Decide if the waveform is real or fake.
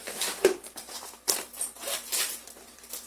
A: fake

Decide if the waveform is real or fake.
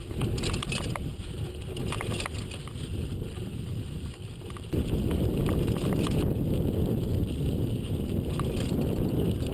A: real